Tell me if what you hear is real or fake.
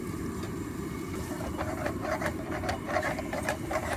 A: fake